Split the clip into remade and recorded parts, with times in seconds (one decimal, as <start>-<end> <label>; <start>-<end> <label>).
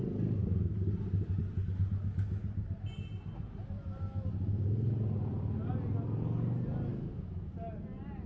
0.0-6.9 recorded; 6.9-7.5 remade; 7.5-8.3 recorded